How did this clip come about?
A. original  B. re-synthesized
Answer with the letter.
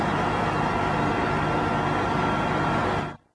A